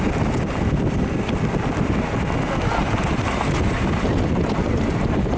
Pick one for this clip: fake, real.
real